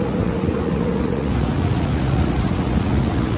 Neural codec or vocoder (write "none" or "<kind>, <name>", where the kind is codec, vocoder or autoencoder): vocoder, Vocos